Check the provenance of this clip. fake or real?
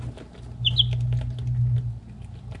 real